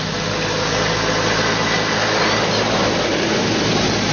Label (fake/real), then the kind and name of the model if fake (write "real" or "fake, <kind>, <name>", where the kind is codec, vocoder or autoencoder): real